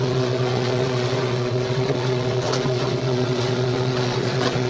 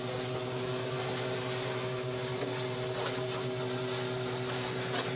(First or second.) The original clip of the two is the second